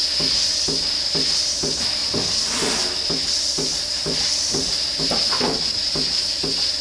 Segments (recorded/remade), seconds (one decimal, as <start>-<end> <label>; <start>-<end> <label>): 0.0-1.0 recorded; 1.0-6.8 remade